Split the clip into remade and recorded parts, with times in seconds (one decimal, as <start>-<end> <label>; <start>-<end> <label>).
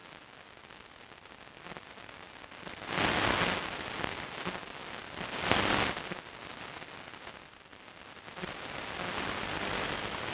0.0-10.3 recorded